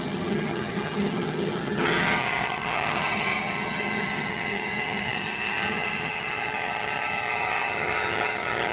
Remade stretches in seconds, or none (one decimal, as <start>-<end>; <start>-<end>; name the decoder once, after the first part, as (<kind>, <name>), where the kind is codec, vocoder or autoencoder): 0.0-8.7 (vocoder, HiFi-GAN)